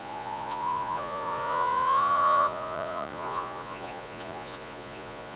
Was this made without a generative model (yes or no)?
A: no